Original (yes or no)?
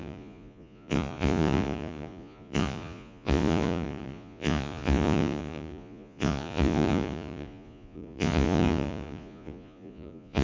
no